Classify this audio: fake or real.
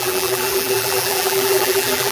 fake